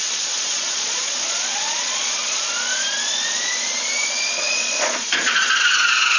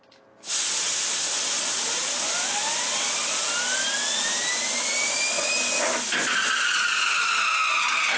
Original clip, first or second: second